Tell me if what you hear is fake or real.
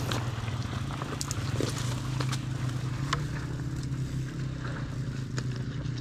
real